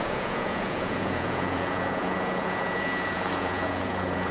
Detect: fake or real fake